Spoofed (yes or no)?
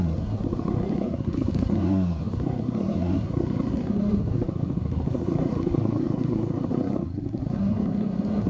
yes